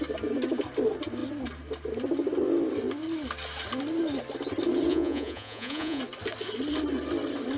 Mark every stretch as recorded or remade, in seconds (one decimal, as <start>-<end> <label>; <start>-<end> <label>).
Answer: 0.0-4.9 recorded; 4.9-6.0 remade; 6.0-7.6 recorded

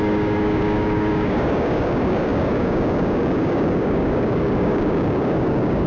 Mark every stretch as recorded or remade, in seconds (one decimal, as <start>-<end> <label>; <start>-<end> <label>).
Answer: 0.0-5.9 remade